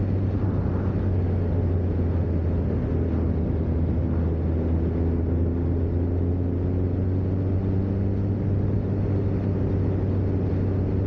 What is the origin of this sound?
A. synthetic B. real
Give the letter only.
B